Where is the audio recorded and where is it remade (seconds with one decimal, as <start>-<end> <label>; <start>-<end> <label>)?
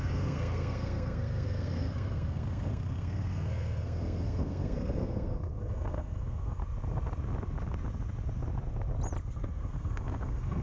0.0-6.6 remade; 6.6-9.2 recorded; 9.2-10.6 remade